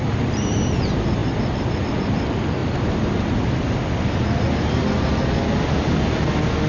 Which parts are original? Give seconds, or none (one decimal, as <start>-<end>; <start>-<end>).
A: 0.0-6.7

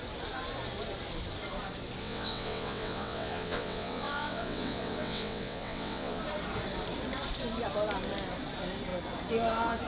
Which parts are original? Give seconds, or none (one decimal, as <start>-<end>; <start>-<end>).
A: 0.0-2.0; 6.2-9.9

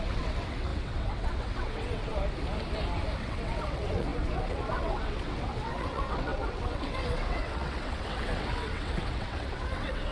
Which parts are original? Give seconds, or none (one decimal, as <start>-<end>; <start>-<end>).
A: 2.1-3.2

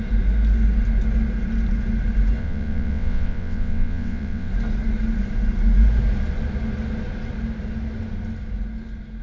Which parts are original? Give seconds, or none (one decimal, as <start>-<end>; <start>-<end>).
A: 0.0-2.4; 4.5-9.2

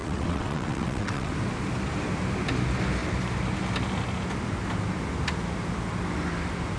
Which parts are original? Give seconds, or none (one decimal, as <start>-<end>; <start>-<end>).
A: 1.3-6.8

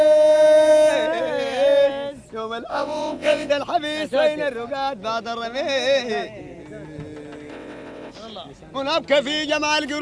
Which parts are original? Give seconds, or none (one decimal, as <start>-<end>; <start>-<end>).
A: 0.0-2.7; 3.5-7.5; 8.1-10.0